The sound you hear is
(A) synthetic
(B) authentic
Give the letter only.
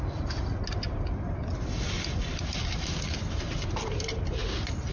B